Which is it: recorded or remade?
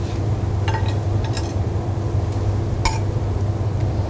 recorded